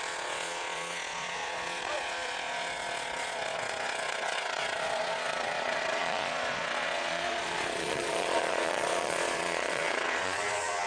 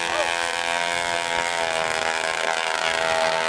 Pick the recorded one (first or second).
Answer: second